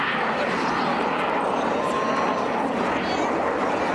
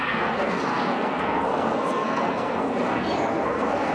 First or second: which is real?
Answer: first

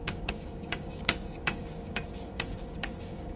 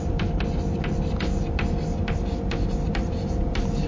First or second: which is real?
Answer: second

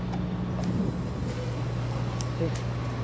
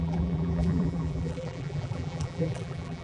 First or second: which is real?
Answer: first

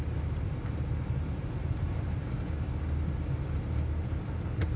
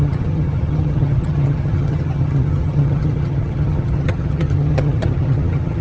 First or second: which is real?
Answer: first